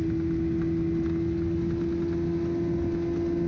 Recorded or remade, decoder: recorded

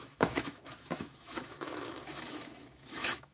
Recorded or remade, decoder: remade, autoencoder, DAC-VAE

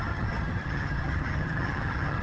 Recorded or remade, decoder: remade, vocoder, HiFi-GAN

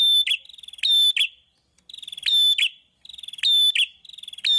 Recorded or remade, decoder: recorded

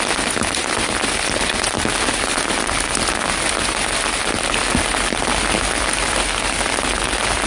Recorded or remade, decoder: recorded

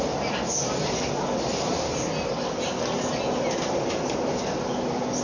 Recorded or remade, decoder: recorded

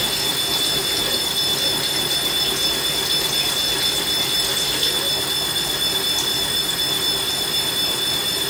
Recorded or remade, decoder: recorded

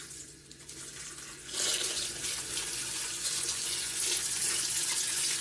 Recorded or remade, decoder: remade, vocoder, Vocos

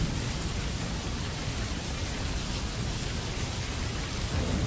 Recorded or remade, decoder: recorded